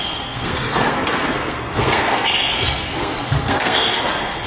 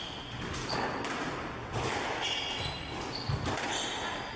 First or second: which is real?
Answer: second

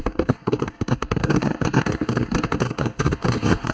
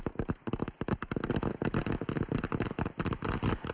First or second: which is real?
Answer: second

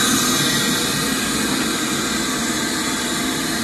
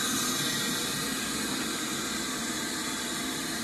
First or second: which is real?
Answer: first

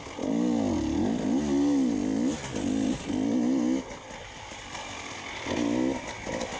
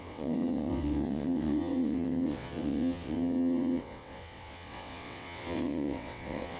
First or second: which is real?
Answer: first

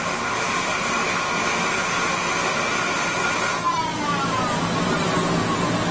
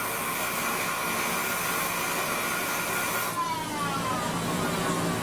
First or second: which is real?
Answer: second